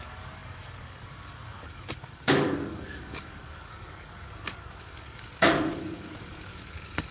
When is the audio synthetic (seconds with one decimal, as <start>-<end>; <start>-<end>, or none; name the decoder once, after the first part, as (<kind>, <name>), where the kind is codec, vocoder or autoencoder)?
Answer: 0.0-7.1 (codec, DAC)